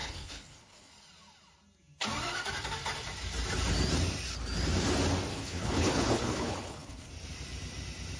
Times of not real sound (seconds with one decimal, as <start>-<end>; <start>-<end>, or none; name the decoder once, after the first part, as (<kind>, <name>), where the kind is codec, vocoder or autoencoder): 0.0-0.9 (codec, HILCodec); 5.3-7.1